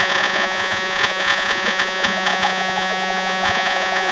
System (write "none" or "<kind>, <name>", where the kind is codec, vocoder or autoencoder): vocoder, Vocos